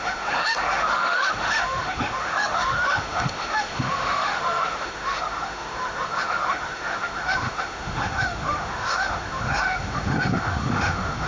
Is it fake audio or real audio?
fake